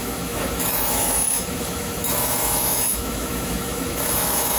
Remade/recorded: remade